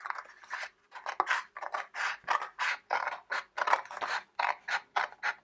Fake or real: real